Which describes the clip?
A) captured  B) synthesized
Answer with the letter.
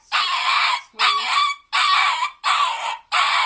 B